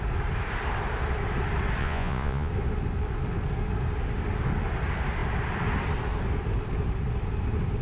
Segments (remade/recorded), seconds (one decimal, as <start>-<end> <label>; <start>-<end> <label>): 0.0-1.8 recorded; 1.8-2.5 remade; 2.5-7.8 recorded